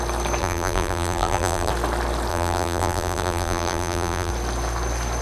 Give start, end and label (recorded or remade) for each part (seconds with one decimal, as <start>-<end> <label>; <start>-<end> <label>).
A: 0.0-0.4 recorded; 0.4-1.7 remade; 1.7-2.3 recorded; 2.3-4.3 remade; 4.3-5.2 recorded